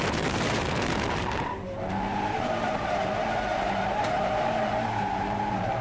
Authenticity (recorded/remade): remade